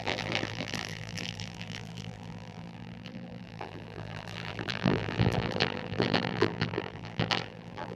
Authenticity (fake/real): fake